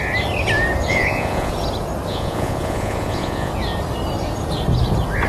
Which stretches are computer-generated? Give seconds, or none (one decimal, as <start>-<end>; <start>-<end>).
0.9-1.5; 2.1-3.5